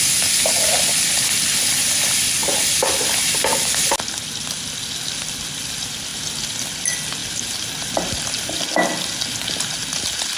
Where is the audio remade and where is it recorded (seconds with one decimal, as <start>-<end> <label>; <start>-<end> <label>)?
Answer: 0.0-10.4 recorded

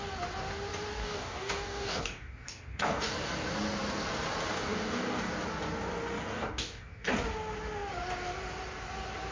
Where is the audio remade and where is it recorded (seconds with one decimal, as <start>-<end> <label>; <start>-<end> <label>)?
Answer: 0.0-1.0 recorded; 1.0-3.1 remade; 3.1-4.5 recorded; 4.5-5.3 remade; 5.3-6.3 recorded; 6.3-7.1 remade; 7.1-9.3 recorded

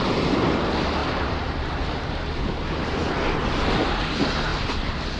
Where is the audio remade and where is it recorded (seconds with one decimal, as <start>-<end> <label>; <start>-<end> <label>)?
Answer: 0.0-1.0 recorded; 1.0-1.8 remade; 1.8-3.0 recorded; 3.0-3.8 remade; 3.8-4.5 recorded; 4.5-5.2 remade

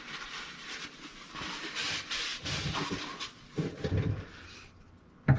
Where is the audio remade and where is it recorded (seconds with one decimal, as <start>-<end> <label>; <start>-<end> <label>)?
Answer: 0.0-5.4 recorded

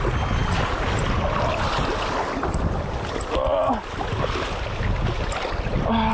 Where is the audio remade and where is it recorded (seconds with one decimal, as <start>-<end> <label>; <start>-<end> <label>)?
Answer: 0.0-6.1 recorded

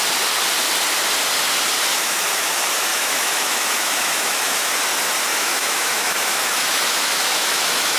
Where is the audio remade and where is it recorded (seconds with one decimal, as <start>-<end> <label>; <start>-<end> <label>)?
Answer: 0.0-1.9 recorded; 1.9-2.5 remade; 2.5-2.9 recorded; 2.9-4.7 remade; 4.7-5.3 recorded; 5.3-8.0 remade

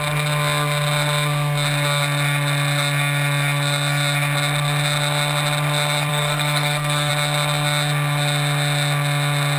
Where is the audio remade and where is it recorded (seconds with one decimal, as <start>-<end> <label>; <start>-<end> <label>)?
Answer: 0.0-6.1 recorded; 6.1-7.1 remade; 7.1-9.6 recorded

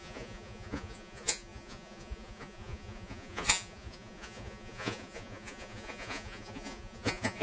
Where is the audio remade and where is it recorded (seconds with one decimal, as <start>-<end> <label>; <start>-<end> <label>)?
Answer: 0.0-7.4 remade